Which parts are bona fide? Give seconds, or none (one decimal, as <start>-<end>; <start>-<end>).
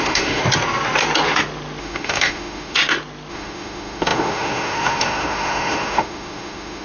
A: 0.4-1.8; 2.8-3.3